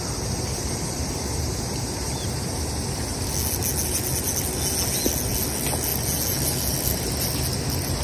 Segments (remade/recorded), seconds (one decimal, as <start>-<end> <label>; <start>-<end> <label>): 0.0-8.0 recorded